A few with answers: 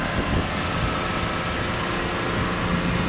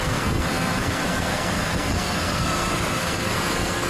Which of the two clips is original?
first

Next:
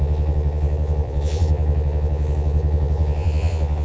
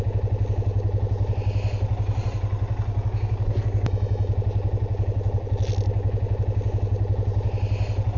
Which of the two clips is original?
second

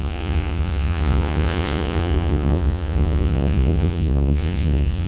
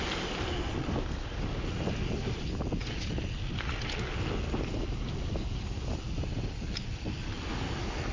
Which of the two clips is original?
second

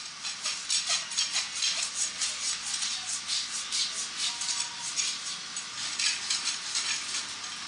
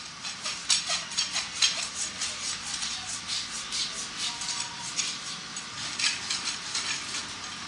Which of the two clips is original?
first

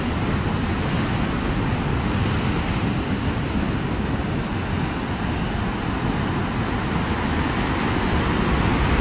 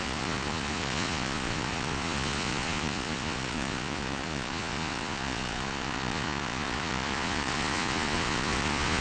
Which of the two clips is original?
first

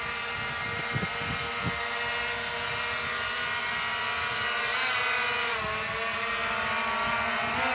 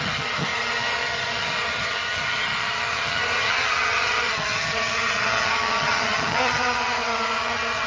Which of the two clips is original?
first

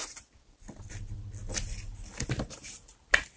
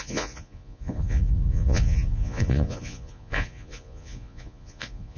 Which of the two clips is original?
first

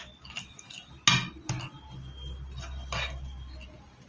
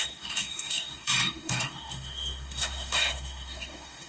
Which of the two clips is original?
first